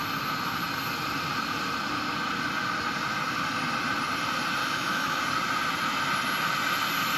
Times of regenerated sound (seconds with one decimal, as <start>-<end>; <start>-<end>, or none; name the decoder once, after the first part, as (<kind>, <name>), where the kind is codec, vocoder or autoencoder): 4.6-5.2 (autoencoder, DAC-VAE)